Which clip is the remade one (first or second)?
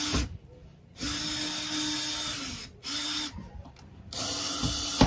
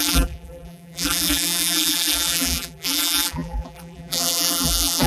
second